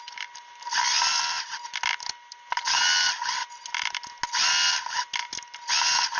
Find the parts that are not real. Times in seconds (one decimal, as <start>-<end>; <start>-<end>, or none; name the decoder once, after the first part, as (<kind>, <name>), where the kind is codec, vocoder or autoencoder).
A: none